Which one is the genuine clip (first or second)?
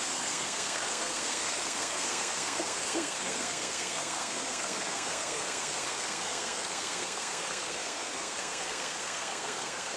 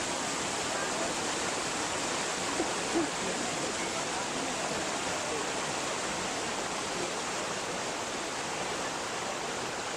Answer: second